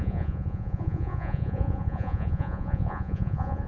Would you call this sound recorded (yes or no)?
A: no